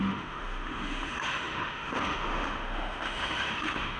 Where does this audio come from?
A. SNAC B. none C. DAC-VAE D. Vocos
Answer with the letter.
C